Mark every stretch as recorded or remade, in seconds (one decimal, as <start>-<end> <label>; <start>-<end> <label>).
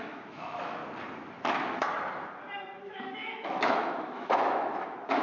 0.0-0.8 remade; 0.8-2.8 recorded; 2.8-5.2 remade